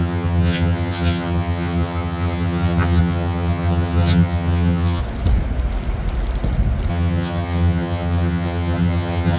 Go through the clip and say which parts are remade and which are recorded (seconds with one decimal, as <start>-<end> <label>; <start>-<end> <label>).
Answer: 0.0-5.0 remade; 5.0-6.9 recorded; 6.9-9.4 remade